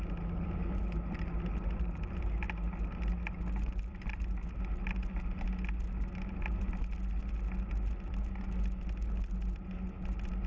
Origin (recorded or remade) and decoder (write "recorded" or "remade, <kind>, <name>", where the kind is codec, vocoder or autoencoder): recorded